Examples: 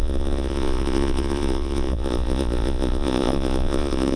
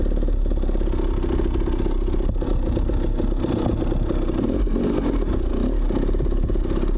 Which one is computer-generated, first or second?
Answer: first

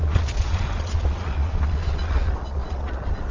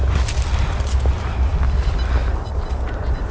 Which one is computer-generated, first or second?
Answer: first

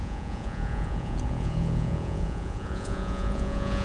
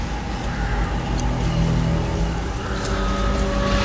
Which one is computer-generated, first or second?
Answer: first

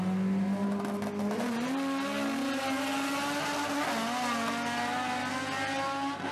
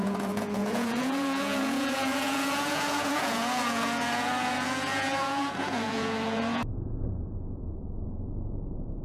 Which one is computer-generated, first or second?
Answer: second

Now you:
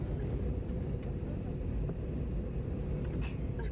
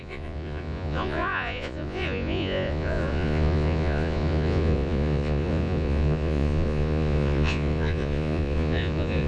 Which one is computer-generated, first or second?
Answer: second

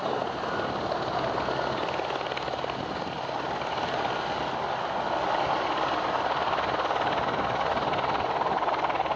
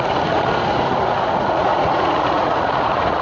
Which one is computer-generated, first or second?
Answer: second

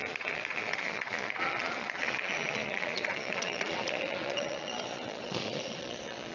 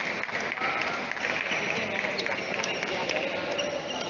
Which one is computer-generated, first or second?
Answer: first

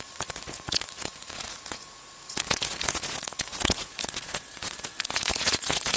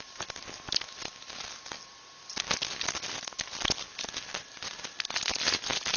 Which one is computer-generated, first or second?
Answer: first